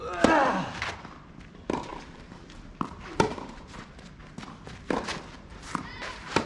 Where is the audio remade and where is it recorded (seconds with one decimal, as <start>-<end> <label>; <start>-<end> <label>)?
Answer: 0.0-1.9 recorded; 1.9-3.9 remade; 3.9-5.5 recorded; 5.5-6.5 remade